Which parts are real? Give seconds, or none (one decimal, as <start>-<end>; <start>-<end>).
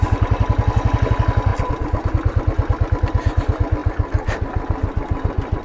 0.0-5.6